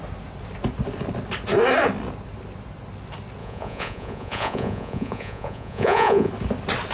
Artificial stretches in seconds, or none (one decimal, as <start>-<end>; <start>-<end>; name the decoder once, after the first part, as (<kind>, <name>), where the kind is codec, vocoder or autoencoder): 3.4-6.3 (vocoder, Vocos)